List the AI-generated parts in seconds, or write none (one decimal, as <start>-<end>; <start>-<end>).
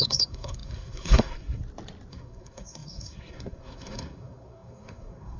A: 0.0-1.6; 2.1-5.4